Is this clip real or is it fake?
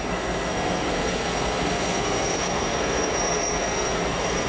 fake